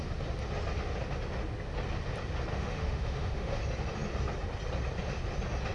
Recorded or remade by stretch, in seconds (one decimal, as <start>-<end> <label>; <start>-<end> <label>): 0.0-2.5 recorded; 2.5-3.6 remade; 3.6-5.7 recorded